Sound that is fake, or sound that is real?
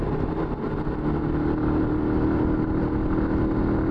real